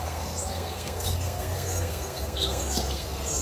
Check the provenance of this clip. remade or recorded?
remade